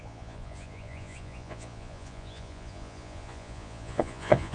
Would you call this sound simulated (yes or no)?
yes